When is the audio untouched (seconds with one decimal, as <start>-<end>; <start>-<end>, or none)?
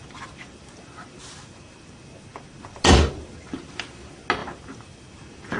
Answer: 0.0-5.6